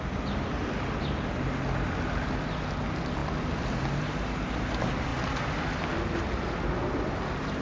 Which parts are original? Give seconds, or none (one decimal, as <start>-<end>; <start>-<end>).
0.0-7.6